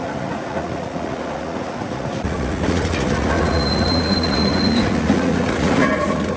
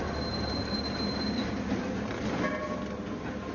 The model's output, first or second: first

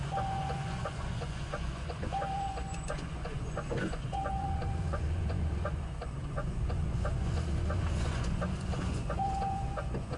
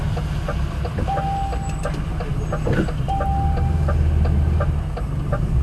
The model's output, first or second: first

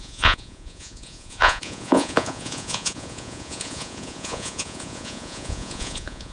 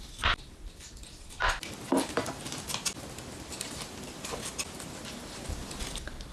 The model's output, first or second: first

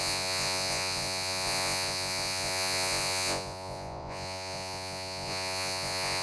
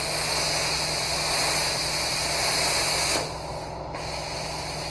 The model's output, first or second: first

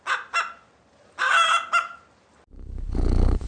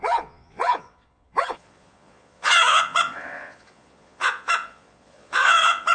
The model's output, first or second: second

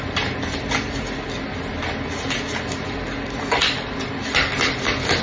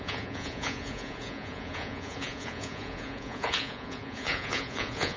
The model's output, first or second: second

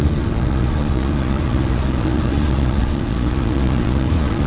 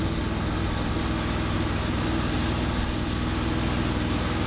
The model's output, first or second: first